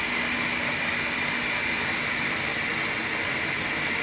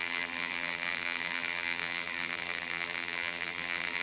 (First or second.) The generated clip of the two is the second